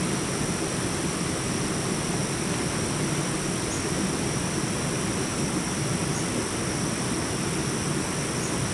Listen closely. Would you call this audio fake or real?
real